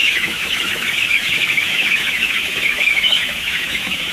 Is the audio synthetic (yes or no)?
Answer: yes